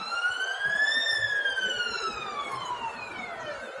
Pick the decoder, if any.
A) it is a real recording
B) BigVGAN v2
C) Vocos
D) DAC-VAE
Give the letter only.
A